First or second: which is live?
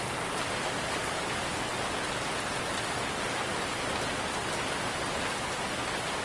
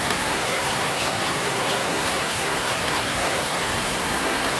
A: first